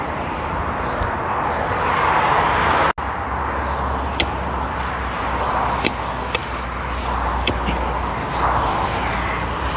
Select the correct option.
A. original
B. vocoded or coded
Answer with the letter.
A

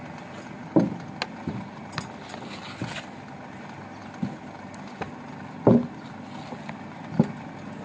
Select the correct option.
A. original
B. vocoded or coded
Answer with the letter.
A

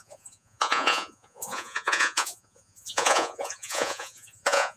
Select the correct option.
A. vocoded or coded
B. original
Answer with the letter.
A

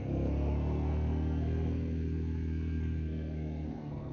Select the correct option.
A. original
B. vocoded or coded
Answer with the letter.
B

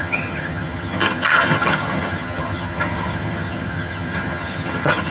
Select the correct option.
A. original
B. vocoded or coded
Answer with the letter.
B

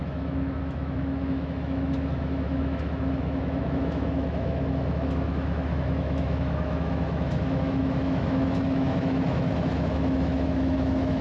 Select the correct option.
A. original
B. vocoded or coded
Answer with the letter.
B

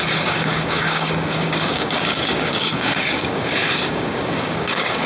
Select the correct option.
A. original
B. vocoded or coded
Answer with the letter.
B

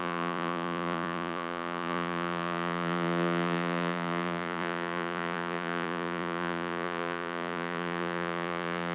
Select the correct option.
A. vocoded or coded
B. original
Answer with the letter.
A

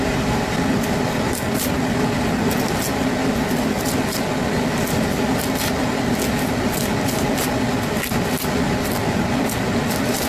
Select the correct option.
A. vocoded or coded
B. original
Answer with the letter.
B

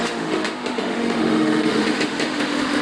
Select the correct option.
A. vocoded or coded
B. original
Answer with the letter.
A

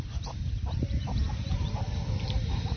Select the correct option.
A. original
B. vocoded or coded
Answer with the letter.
B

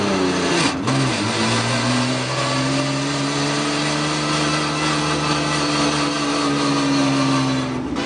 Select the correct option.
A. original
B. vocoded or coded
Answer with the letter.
A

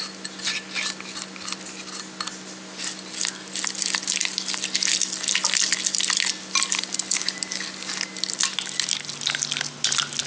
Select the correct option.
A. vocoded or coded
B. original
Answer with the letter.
B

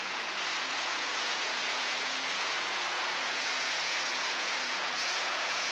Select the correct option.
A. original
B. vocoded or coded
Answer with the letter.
B